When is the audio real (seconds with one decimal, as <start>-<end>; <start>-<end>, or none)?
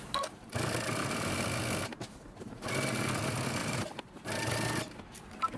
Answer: 0.0-3.6; 5.0-5.6